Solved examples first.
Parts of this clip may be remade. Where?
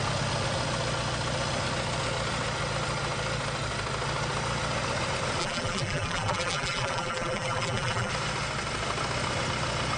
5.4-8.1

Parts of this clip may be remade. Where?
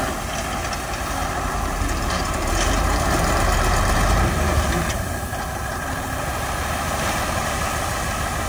1.2-5.2; 5.7-7.6